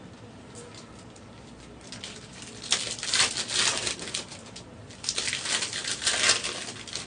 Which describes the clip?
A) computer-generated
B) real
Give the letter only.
B